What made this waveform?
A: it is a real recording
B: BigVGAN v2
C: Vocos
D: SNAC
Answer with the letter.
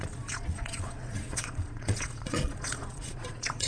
C